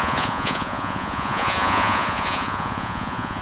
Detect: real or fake fake